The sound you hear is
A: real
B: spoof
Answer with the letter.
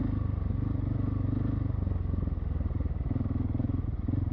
A